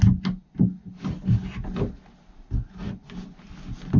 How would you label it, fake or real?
real